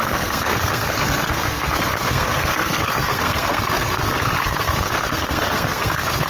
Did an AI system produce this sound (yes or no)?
yes